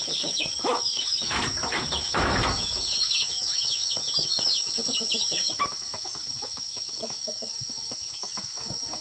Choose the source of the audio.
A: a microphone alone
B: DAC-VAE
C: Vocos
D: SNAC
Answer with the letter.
B